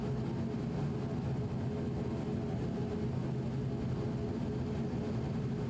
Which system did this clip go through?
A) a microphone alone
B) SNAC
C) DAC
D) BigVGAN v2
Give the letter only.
A